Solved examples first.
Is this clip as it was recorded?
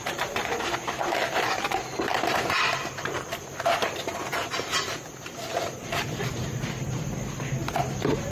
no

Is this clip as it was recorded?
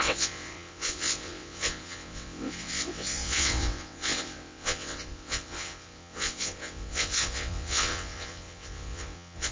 no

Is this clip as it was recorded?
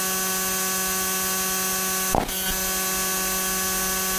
yes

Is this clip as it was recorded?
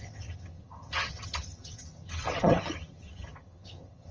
no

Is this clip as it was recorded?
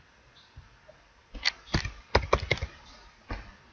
yes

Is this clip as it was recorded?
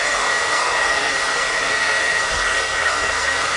no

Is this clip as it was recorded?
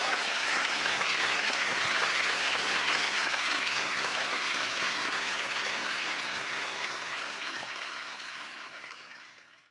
no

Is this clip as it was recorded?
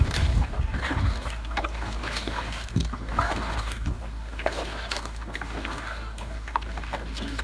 no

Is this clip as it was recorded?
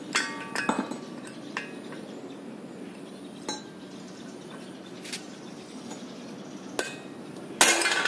yes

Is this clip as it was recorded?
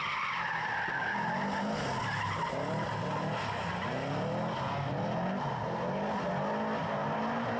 yes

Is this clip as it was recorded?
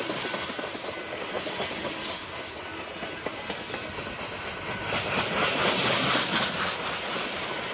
yes